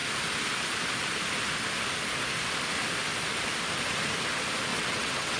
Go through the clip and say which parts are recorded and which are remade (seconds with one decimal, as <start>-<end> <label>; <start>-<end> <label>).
0.0-4.7 recorded; 4.7-5.4 remade